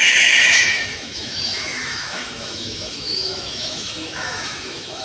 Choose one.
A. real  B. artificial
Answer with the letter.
B